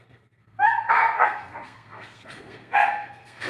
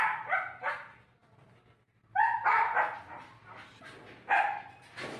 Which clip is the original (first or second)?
second